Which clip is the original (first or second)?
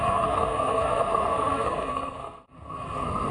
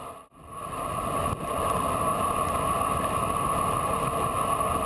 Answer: second